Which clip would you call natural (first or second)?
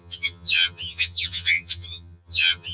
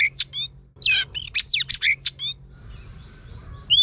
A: second